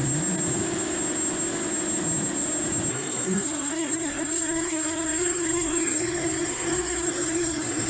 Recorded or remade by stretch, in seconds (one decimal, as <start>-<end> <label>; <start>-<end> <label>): 0.0-2.9 recorded; 2.9-7.9 remade